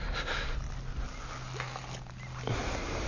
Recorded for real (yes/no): yes